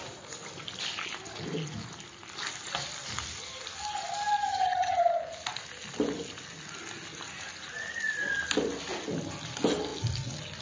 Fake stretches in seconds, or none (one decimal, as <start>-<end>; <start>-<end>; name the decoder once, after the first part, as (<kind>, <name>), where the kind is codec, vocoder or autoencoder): 4.5-5.0 (vocoder, HiFi-GAN)